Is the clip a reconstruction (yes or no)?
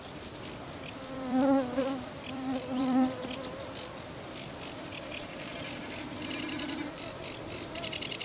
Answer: yes